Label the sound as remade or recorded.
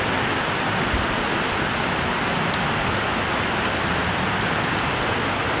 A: recorded